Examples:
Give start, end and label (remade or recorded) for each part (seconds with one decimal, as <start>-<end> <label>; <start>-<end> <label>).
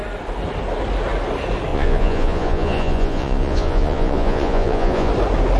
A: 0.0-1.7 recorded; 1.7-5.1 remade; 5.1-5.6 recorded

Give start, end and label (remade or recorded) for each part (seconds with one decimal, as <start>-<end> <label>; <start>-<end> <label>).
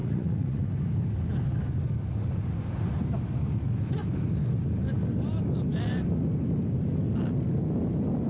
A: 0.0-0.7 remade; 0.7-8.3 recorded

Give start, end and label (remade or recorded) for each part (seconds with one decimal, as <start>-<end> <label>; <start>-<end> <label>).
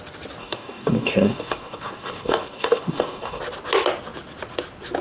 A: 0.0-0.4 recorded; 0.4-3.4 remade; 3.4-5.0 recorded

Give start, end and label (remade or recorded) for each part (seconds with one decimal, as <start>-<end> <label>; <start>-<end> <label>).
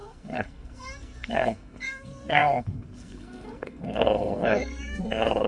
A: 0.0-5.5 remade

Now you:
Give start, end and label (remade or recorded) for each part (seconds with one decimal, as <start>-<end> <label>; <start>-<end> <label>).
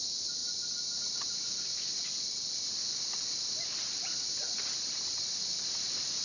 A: 0.0-6.2 recorded